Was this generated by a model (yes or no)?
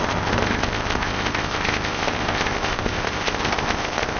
yes